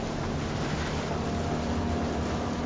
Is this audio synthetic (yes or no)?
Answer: no